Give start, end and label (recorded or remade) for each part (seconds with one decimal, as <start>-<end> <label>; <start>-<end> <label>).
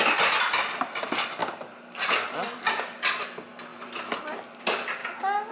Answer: 0.0-5.5 recorded